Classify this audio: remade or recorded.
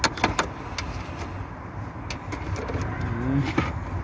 recorded